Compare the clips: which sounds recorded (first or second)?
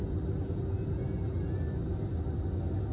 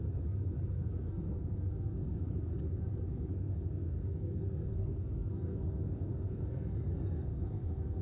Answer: first